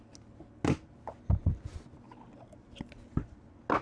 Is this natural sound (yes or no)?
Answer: yes